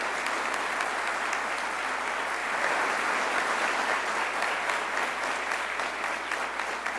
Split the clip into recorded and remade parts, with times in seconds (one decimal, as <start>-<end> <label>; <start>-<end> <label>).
0.0-7.0 recorded